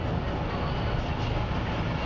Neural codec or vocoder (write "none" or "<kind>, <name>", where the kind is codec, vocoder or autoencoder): none